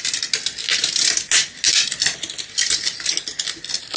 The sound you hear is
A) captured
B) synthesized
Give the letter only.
A